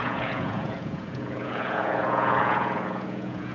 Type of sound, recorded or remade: remade